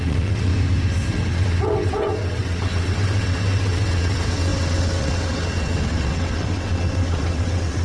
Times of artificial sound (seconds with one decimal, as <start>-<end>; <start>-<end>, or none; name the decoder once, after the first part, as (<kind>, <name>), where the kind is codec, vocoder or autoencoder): 0.0-0.5 (vocoder, WaveNeXt); 1.1-7.8